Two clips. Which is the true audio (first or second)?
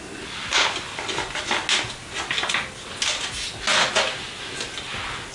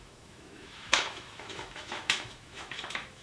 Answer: first